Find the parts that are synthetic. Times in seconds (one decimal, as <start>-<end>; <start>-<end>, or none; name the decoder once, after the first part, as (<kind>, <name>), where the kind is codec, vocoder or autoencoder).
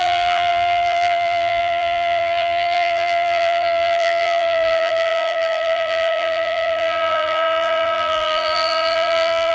0.0-9.5 (vocoder, BigVGAN v2)